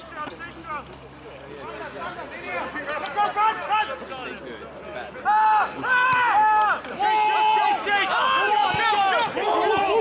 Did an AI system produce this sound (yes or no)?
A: no